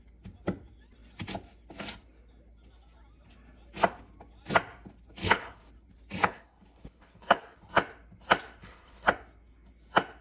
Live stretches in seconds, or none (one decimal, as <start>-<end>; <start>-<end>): 0.0-5.2; 5.7-6.2; 7.7-8.6; 9.1-10.2